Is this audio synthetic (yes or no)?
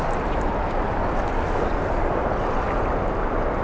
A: no